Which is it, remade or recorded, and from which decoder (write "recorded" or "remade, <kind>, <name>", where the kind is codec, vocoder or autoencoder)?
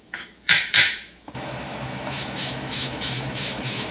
remade, autoencoder, DAC-VAE